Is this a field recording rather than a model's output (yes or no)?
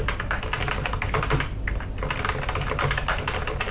yes